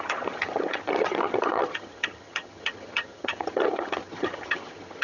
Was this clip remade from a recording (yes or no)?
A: yes